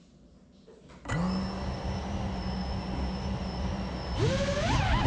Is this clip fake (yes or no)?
no